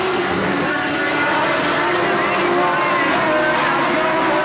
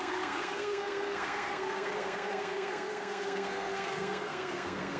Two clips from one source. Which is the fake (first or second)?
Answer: second